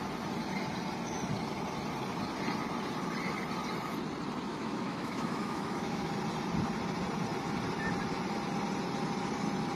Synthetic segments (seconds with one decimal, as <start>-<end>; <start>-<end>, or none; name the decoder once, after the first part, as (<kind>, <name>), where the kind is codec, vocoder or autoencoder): 4.5-6.1 (autoencoder, DAC-VAE)